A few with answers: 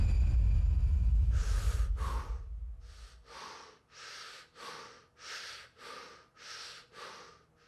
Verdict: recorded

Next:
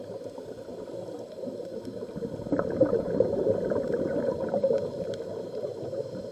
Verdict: recorded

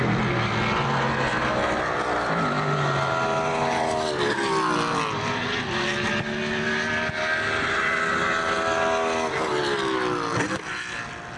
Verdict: recorded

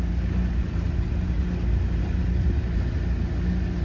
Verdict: recorded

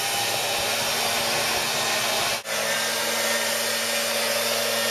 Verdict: recorded